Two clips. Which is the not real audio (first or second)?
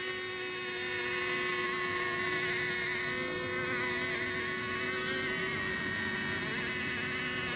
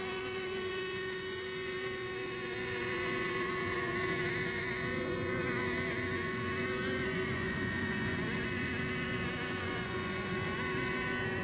second